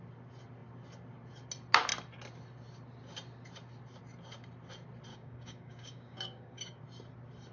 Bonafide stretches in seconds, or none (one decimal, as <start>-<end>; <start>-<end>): 0.0-5.1; 6.8-7.5